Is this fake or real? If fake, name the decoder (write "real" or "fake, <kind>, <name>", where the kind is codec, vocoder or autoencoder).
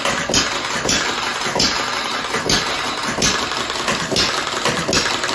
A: real